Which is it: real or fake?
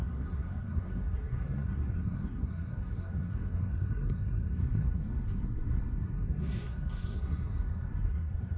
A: fake